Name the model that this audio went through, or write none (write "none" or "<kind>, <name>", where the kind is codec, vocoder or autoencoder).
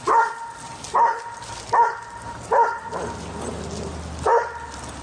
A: none